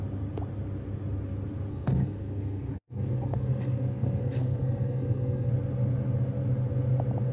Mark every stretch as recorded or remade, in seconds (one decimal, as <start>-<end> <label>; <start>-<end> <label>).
0.0-1.7 recorded; 1.7-5.5 remade; 5.5-7.3 recorded

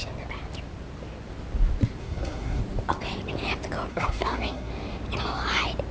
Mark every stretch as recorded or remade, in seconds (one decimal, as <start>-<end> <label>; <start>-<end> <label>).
0.0-2.0 recorded; 2.0-2.6 remade; 2.6-3.9 recorded; 3.9-4.7 remade; 4.7-5.9 recorded

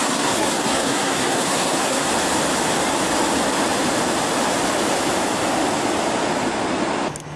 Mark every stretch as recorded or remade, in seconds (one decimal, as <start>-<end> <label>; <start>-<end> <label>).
0.0-2.1 remade; 2.1-7.4 recorded

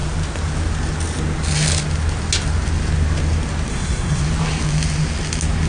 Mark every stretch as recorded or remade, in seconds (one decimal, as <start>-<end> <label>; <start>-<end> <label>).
0.0-3.7 recorded; 3.7-4.2 remade; 4.2-5.7 recorded

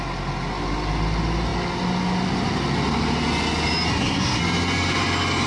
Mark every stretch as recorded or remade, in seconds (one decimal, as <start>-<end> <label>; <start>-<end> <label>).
0.0-3.9 recorded; 3.9-4.4 remade; 4.4-5.5 recorded

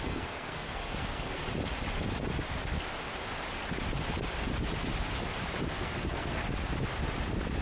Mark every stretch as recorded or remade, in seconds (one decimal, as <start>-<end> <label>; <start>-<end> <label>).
0.0-1.4 remade; 1.4-5.7 recorded; 5.7-6.4 remade; 6.4-7.6 recorded

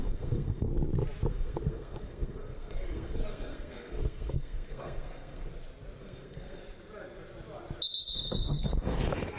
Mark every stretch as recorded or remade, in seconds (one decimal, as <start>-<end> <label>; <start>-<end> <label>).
0.0-0.7 remade; 0.7-1.3 recorded; 1.3-5.5 remade; 5.5-6.0 recorded; 6.0-6.6 remade; 6.6-8.0 recorded; 8.0-9.4 remade

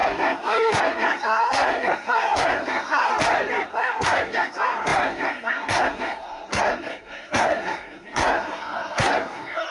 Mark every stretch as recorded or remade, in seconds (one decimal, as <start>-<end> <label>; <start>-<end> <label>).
0.0-3.1 remade; 3.1-3.7 recorded; 3.7-9.7 remade